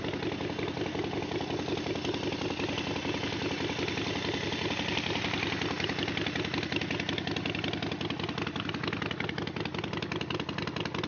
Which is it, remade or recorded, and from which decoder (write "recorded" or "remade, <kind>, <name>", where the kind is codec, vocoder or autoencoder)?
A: recorded